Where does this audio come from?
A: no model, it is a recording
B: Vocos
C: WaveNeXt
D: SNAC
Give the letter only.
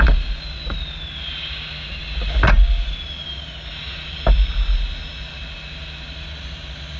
A